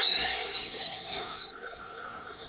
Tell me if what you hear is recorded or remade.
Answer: remade